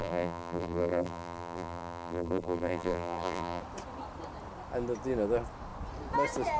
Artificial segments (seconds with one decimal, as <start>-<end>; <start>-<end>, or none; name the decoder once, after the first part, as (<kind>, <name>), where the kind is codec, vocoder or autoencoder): 0.0-3.6 (vocoder, BigVGAN v2)